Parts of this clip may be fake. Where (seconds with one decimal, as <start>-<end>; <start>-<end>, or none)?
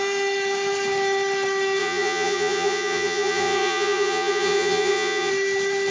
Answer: 1.8-5.3